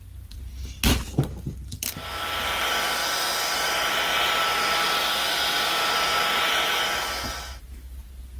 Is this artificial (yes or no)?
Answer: no